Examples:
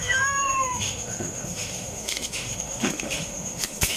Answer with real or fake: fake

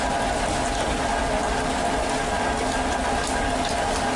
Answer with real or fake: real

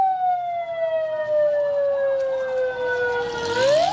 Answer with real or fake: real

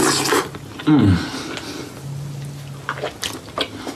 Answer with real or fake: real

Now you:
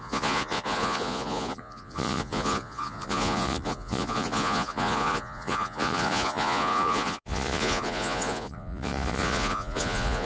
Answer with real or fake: fake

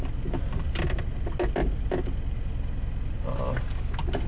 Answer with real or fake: real